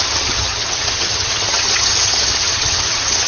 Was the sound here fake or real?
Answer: fake